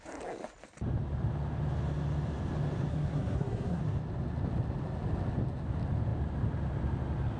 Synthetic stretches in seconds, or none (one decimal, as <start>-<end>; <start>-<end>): 2.9-3.8